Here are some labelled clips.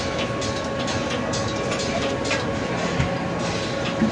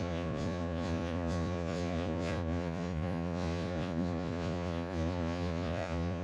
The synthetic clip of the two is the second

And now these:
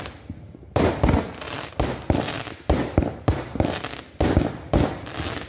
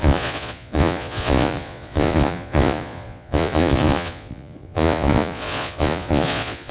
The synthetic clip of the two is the second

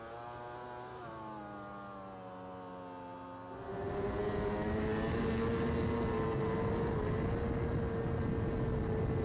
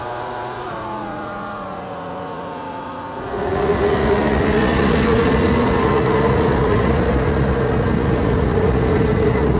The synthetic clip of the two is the second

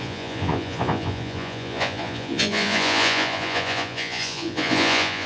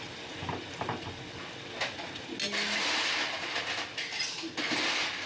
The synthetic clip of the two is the first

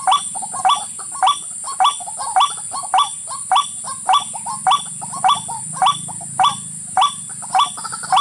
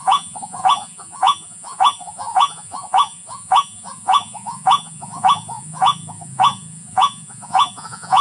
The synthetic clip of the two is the second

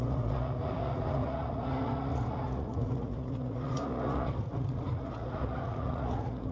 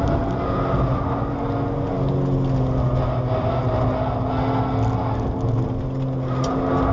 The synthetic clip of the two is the first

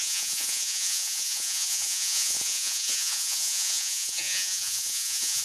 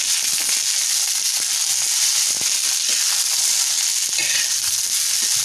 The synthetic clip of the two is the first